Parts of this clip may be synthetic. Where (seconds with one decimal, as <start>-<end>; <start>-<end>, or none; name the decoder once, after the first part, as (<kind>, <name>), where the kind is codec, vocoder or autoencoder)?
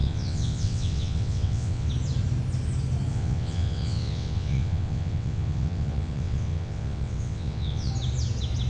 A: 0.0-1.9 (vocoder, WaveNeXt); 3.1-7.9